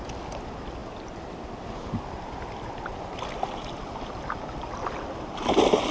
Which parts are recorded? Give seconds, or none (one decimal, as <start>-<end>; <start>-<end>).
0.0-0.8; 2.0-5.9